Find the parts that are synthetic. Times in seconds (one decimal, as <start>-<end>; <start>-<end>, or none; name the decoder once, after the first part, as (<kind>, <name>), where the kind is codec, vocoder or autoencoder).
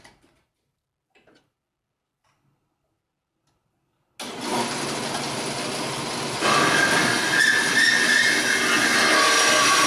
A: none